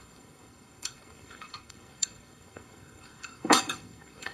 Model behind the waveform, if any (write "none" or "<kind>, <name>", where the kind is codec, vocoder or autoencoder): codec, SNAC